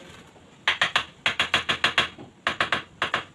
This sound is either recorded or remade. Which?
recorded